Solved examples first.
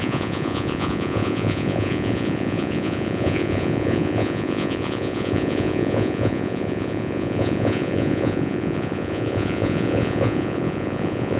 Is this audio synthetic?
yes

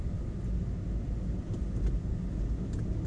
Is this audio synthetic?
no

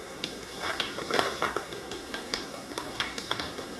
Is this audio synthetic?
yes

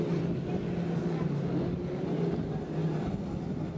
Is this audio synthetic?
no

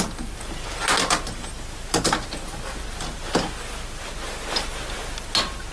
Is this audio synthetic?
no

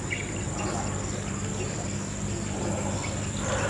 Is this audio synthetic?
no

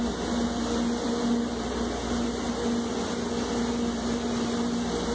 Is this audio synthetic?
no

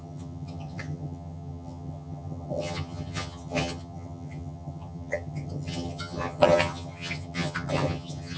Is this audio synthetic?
yes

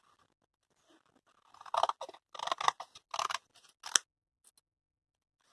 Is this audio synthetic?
no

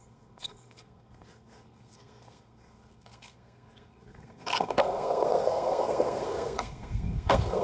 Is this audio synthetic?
yes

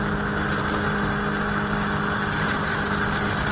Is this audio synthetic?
no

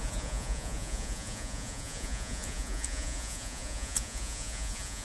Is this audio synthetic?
yes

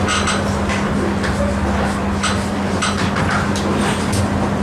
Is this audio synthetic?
no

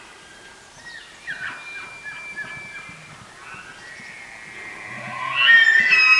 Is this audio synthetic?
no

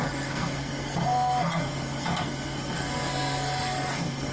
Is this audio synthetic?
yes